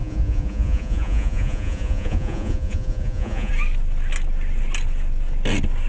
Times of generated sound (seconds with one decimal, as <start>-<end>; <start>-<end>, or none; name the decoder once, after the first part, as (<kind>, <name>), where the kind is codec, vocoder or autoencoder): 0.0-3.5 (vocoder, Vocos)